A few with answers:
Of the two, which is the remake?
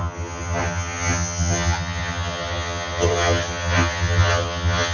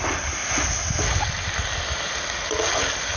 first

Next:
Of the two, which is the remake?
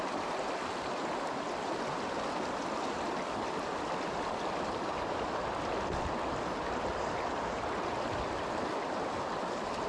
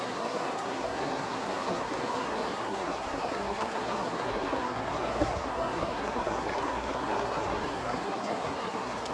second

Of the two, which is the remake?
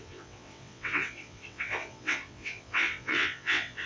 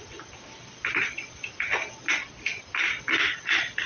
first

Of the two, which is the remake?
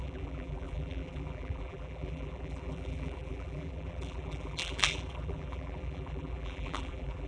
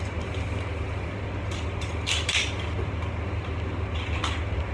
first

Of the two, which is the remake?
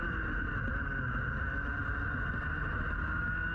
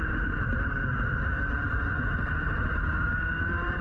second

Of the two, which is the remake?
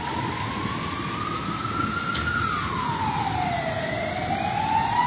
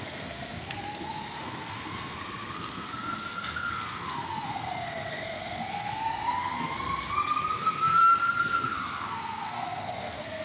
second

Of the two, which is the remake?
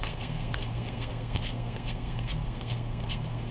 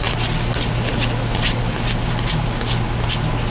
first